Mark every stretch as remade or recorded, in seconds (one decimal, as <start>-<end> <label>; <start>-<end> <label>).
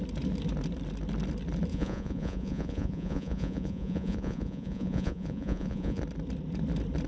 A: 0.0-1.7 recorded; 1.7-6.0 remade; 6.0-7.1 recorded